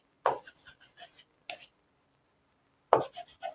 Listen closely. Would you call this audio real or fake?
real